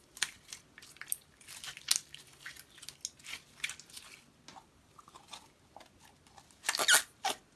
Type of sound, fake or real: real